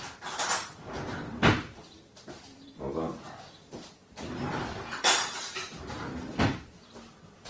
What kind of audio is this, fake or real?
fake